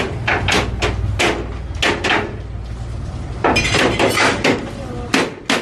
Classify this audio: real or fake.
real